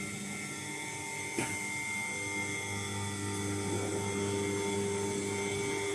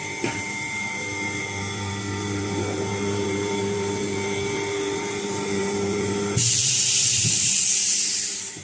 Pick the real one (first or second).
first